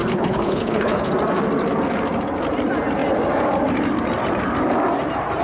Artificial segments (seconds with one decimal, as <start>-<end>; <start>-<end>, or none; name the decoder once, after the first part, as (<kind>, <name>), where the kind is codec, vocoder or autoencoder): 0.0-1.1 (codec, HILCodec)